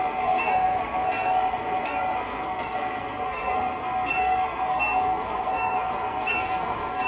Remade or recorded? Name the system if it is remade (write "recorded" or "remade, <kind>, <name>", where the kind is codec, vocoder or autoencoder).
remade, codec, SNAC